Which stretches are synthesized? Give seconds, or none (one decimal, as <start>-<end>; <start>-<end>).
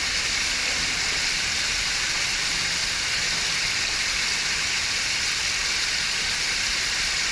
0.0-2.8